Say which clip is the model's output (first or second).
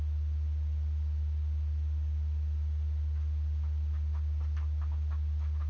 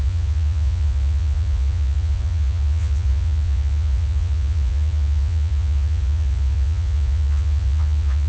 second